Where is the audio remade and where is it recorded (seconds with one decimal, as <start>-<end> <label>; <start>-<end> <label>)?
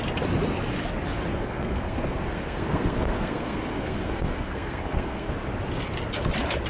0.0-1.3 recorded; 1.3-5.3 remade; 5.3-6.7 recorded